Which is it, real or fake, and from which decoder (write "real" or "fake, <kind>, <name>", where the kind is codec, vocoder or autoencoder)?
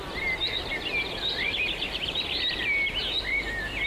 real